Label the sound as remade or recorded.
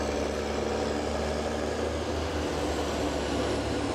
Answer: recorded